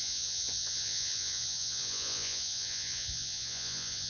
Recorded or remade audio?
remade